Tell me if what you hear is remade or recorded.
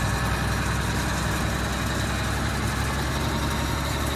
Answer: recorded